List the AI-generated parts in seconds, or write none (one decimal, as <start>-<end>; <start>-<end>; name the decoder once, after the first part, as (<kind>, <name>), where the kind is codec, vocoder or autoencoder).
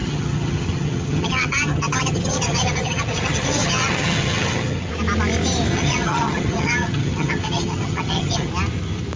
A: 0.0-4.9 (vocoder, HiFi-GAN); 5.7-8.5